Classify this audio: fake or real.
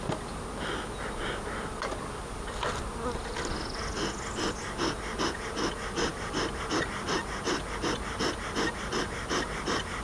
real